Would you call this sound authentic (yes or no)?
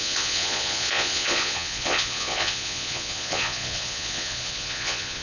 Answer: no